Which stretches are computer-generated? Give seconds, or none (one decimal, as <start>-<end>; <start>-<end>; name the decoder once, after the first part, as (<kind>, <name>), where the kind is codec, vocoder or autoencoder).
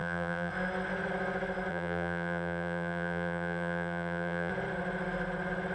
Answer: 0.0-0.5 (vocoder, BigVGAN v2); 1.7-4.5